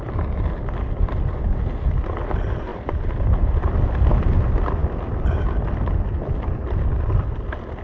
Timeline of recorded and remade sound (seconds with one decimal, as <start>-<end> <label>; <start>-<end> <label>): 0.0-2.7 recorded; 2.7-3.7 remade; 3.7-7.8 recorded